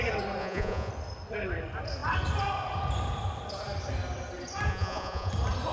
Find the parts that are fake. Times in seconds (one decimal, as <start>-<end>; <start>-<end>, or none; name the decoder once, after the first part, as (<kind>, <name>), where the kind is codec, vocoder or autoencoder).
0.4-0.9 (vocoder, Vocos); 4.7-5.3